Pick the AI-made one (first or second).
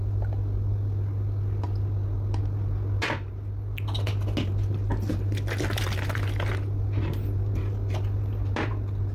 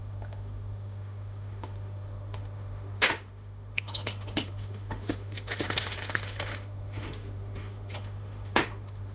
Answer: second